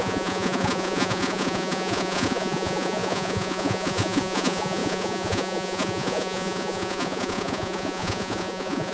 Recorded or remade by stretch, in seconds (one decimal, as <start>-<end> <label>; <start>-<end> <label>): 0.0-8.9 remade